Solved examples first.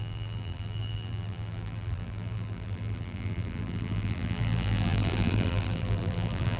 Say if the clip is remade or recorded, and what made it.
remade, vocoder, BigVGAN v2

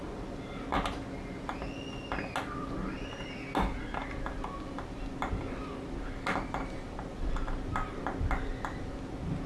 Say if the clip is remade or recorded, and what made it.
recorded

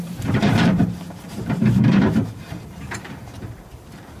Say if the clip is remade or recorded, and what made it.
remade, vocoder, BigVGAN v2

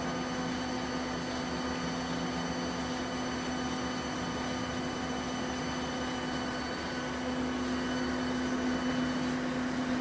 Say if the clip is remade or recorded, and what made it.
recorded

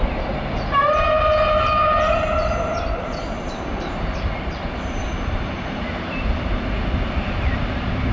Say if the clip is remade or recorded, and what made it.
remade, vocoder, BigVGAN v2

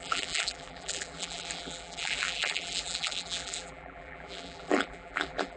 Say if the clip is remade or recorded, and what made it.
remade, vocoder, BigVGAN v2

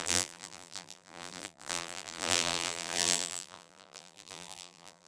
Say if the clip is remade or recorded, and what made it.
remade, vocoder, BigVGAN v2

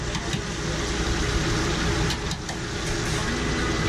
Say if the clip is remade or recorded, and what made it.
recorded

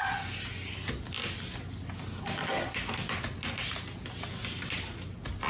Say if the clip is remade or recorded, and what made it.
recorded